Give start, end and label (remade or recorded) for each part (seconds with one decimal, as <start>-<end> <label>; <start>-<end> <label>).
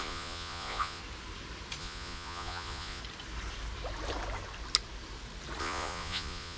0.0-1.0 remade; 1.0-1.8 recorded; 1.8-3.0 remade; 3.0-5.6 recorded; 5.6-6.6 remade